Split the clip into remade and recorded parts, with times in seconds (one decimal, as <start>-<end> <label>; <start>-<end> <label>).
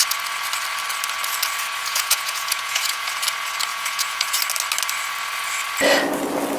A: 0.0-1.8 recorded; 1.8-3.1 remade; 3.1-3.7 recorded; 3.7-4.4 remade; 4.4-6.6 recorded